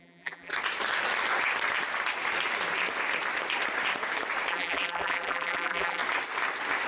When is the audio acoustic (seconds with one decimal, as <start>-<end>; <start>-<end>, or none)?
0.5-4.5; 6.0-6.9